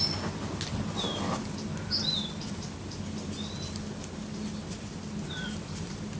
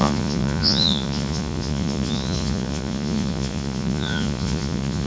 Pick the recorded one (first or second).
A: first